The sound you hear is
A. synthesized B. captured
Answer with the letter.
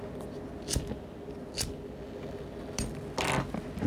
B